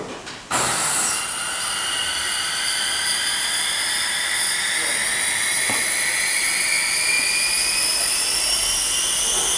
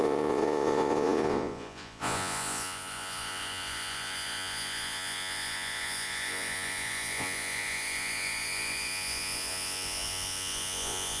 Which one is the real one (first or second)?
first